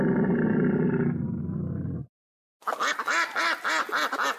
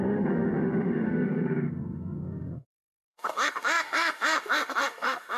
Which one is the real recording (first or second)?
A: first